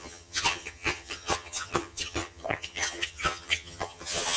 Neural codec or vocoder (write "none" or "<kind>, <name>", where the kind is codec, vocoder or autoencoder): vocoder, HiFi-GAN